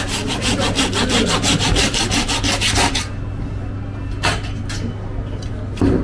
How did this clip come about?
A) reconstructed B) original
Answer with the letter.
B